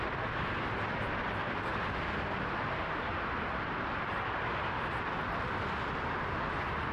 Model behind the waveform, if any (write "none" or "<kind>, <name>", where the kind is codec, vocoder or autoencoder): none